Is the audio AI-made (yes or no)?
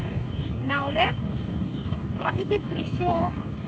yes